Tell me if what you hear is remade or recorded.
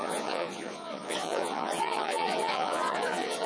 remade